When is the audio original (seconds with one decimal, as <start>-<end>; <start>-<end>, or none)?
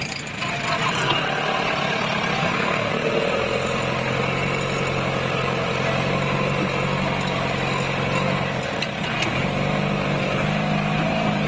0.0-2.4; 2.9-11.5